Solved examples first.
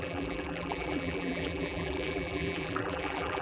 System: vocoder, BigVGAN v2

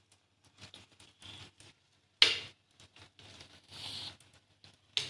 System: none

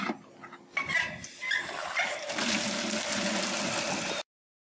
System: none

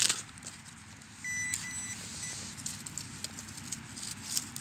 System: none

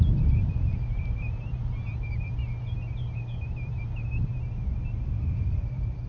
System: vocoder, BigVGAN v2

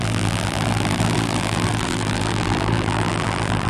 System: vocoder, BigVGAN v2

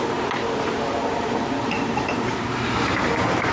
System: vocoder, BigVGAN v2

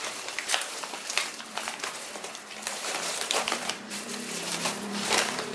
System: vocoder, BigVGAN v2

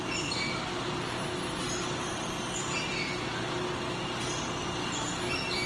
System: none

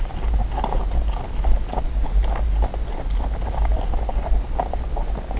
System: none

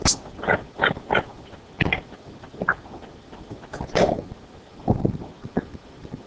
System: none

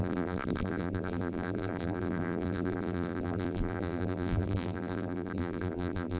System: vocoder, BigVGAN v2